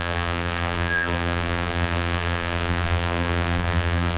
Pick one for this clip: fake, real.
fake